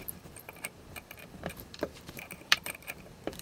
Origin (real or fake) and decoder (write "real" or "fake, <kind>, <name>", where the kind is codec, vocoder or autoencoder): fake, vocoder, BigVGAN v2